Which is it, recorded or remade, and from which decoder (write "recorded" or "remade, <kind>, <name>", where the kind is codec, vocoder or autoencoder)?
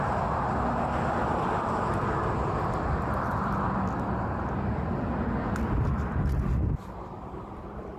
recorded